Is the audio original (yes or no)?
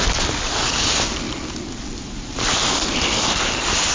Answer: yes